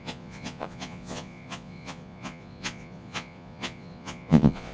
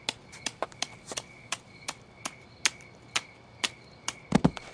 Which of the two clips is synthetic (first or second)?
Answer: first